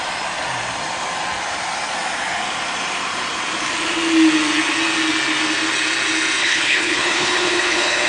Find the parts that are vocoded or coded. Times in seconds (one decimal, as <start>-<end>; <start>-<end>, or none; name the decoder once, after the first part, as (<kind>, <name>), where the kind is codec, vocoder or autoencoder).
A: 6.4-8.1 (codec, HILCodec)